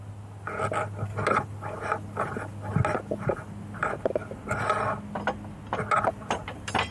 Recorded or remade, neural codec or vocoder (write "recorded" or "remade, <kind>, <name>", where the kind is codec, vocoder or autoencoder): recorded